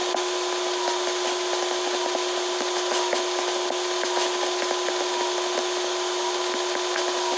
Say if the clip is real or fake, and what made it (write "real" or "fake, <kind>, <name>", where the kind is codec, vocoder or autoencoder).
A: real